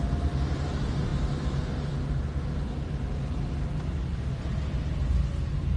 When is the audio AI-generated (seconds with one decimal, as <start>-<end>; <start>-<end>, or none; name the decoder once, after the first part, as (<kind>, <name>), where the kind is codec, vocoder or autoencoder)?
none